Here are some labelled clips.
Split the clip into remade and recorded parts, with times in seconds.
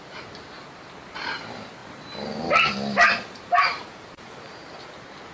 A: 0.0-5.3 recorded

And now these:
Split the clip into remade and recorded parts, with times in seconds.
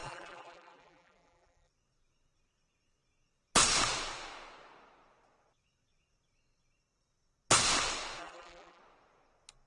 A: 0.0-1.7 remade; 1.7-8.2 recorded; 8.2-8.8 remade; 8.8-9.7 recorded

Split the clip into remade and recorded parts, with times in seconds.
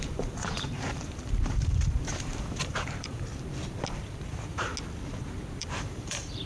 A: 0.0-3.3 remade; 3.3-4.2 recorded; 4.2-4.7 remade; 4.7-5.2 recorded; 5.2-6.5 remade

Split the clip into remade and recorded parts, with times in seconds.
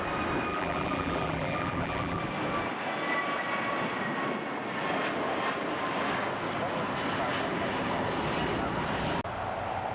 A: 0.0-0.5 recorded; 0.5-2.2 remade; 2.2-9.9 recorded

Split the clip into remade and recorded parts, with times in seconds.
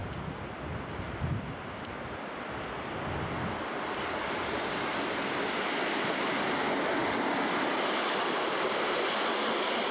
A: 0.0-7.0 recorded; 7.0-9.9 remade